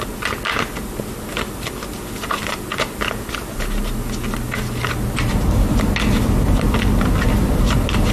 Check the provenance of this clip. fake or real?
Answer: real